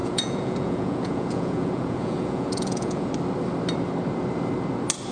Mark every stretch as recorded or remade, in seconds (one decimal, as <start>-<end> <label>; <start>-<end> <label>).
0.0-3.1 remade; 3.1-5.1 recorded